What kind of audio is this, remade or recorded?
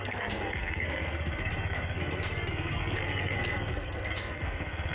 remade